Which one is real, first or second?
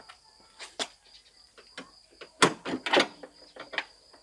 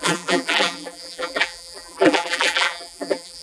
first